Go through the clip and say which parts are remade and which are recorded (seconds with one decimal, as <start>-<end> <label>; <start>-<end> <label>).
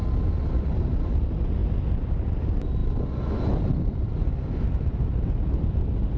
0.0-0.6 remade; 0.6-1.6 recorded; 1.6-2.1 remade; 2.1-6.2 recorded